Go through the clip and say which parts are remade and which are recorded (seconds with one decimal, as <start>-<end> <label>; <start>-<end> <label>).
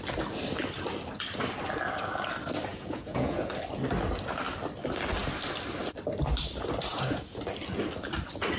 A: 0.0-2.7 recorded; 2.7-3.5 remade; 3.5-6.9 recorded; 6.9-7.4 remade; 7.4-8.6 recorded